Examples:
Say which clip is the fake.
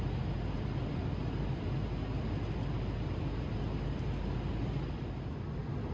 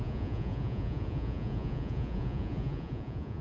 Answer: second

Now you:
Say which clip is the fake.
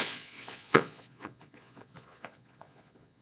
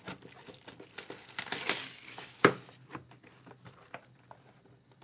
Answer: first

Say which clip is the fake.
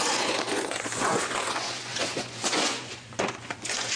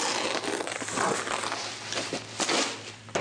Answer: first